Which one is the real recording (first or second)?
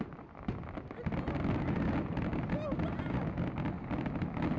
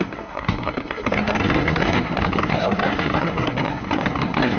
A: first